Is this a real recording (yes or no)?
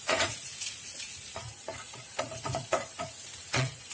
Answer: no